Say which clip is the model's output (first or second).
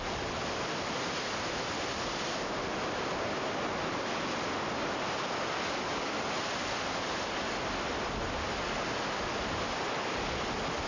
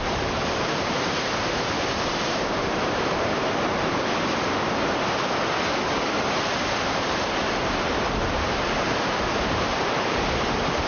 second